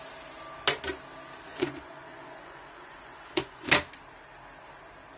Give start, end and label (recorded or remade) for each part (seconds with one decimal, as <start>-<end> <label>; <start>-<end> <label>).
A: 0.0-1.5 recorded; 1.5-3.7 remade; 3.7-5.2 recorded